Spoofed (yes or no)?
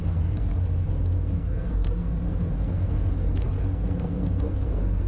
yes